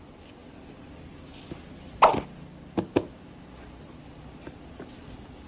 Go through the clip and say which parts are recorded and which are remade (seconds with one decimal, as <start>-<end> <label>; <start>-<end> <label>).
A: 0.0-0.4 recorded; 0.4-1.1 remade; 1.1-4.1 recorded; 4.1-4.9 remade; 4.9-5.5 recorded